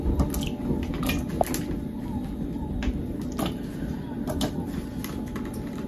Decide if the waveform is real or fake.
real